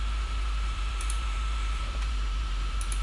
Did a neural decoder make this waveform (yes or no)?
yes